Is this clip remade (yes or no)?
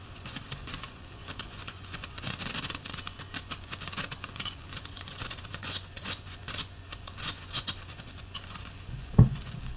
yes